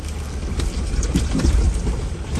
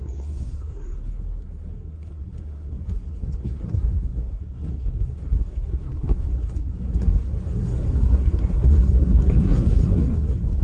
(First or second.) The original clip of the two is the first